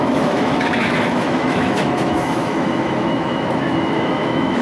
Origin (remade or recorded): remade